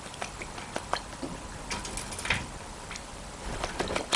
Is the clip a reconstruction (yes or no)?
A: no